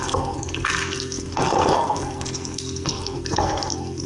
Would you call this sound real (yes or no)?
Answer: no